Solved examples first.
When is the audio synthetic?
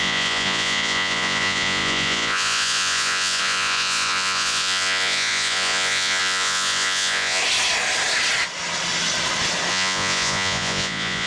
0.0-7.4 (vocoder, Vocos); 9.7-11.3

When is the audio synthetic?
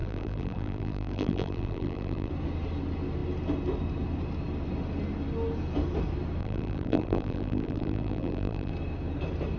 0.0-2.3 (vocoder, BigVGAN v2); 6.4-8.7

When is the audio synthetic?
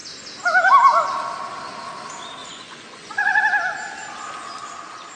2.4-3.4 (vocoder, Vocos)